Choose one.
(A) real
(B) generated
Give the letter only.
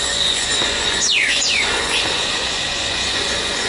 B